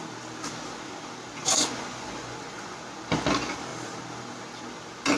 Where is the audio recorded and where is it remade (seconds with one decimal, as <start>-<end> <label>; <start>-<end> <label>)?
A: 0.0-1.4 recorded; 1.4-2.8 remade; 2.8-5.2 recorded